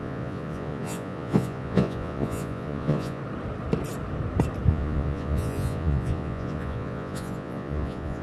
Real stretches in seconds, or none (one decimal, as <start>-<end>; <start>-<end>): 3.2-4.7